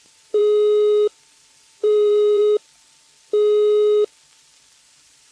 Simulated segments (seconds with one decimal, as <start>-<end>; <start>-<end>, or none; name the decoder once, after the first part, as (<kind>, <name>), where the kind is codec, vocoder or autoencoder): 0.0-0.4 (vocoder, BigVGAN v2); 1.4-2.4; 4.8-5.3